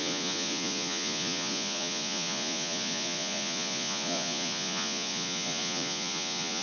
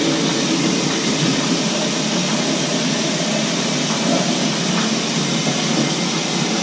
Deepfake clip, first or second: first